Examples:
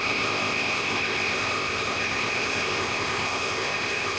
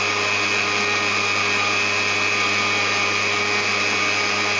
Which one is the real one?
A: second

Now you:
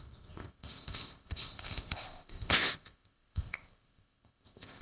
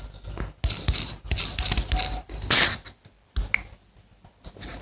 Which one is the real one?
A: second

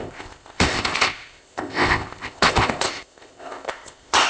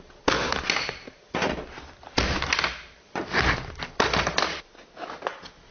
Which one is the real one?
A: second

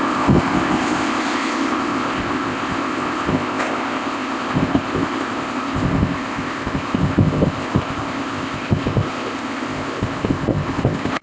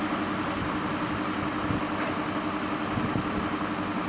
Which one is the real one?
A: second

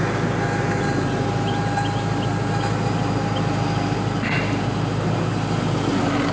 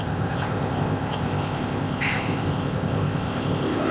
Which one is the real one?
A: first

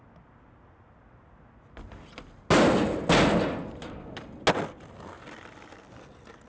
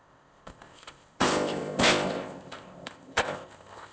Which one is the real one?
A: first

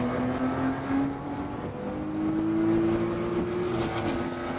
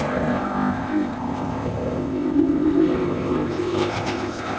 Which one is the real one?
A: first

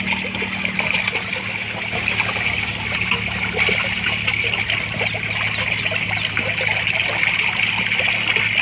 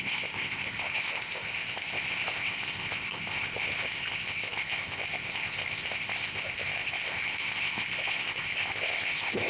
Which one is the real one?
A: first